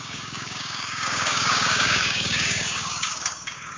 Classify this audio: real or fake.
fake